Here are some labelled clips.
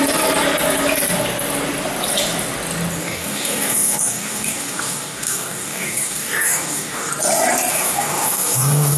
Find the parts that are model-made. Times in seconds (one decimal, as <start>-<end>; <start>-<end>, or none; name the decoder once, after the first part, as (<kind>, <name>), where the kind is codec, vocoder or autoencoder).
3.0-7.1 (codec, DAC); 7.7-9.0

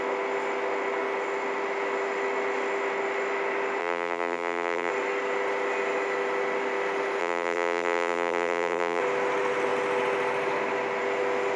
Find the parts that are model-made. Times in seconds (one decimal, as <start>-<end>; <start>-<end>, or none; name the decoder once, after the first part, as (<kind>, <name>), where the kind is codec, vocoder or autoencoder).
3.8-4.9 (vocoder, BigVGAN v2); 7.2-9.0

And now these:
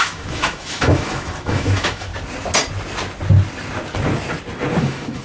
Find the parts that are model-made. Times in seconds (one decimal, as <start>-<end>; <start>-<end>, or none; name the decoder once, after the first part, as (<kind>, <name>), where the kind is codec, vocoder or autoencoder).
0.0-2.1 (autoencoder, DAC-VAE); 4.8-5.2